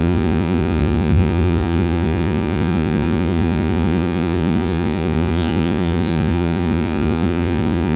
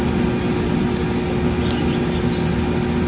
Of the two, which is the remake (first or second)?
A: first